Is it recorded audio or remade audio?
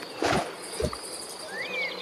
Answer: recorded